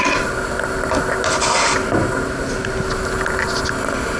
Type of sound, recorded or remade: recorded